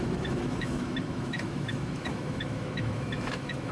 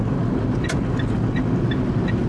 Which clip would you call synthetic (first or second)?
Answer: first